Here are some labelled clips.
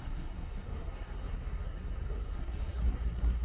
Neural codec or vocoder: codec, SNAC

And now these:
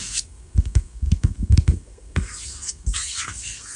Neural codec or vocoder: codec, SNAC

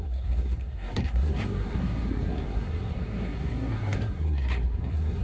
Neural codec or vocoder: codec, SNAC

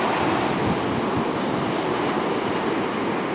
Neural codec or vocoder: none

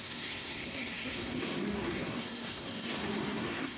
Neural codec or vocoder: codec, SNAC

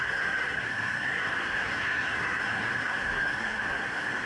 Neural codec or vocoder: codec, SNAC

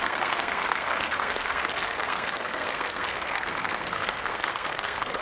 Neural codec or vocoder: codec, SNAC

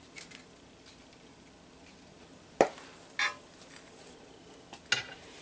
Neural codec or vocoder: none